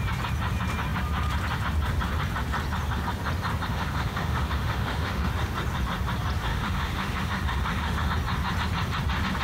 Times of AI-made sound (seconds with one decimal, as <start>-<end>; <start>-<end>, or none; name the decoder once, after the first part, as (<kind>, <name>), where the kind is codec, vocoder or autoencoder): 3.7-5.3 (autoencoder, DAC-VAE); 6.5-8.1